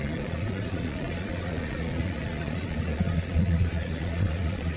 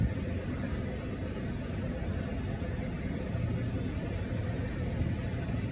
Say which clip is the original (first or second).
second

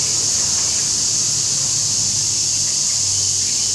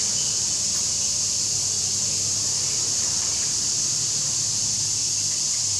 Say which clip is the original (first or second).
first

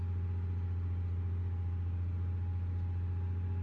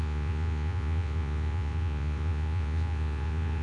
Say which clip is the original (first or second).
first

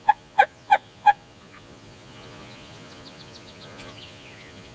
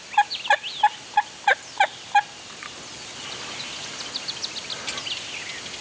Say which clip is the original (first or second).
second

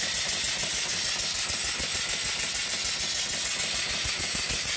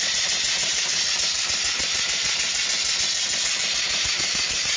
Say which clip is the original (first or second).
first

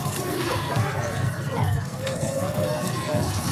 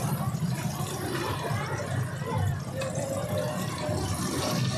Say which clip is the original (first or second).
second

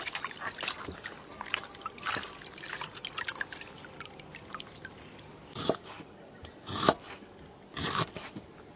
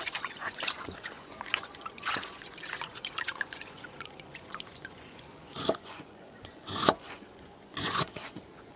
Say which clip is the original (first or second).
first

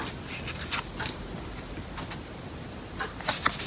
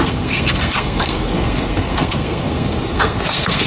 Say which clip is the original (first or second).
first